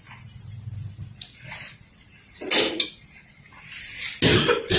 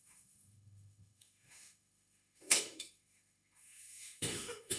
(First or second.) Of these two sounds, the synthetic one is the second